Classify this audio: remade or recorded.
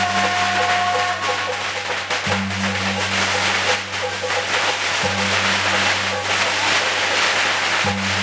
recorded